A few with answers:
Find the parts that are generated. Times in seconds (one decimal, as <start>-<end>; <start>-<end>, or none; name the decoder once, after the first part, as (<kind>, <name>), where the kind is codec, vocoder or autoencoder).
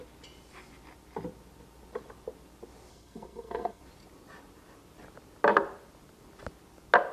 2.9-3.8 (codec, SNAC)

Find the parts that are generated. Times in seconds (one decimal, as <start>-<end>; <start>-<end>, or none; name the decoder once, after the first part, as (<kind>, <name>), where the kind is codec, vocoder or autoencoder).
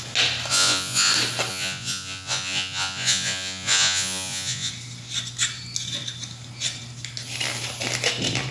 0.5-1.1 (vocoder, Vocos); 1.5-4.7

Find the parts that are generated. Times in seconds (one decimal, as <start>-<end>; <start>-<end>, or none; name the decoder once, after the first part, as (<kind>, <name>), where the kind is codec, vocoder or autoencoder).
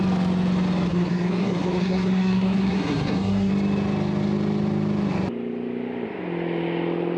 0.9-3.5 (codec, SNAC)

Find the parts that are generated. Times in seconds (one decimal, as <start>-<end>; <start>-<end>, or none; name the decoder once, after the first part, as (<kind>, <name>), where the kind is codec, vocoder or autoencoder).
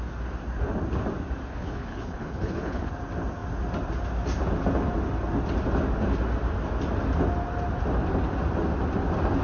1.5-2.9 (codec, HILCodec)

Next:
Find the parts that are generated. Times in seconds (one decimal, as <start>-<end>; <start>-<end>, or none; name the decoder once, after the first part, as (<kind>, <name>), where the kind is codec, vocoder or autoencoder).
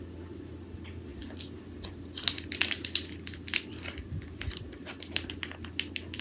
none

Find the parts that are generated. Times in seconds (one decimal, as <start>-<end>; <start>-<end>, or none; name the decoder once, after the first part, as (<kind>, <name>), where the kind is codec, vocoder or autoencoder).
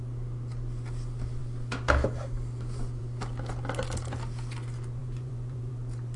5.0-5.7 (vocoder, Vocos)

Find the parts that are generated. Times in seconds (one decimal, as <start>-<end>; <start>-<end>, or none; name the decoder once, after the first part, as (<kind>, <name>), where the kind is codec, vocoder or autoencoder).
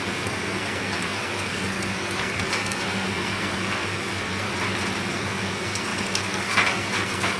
0.0-4.5 (codec, SNAC); 5.1-7.4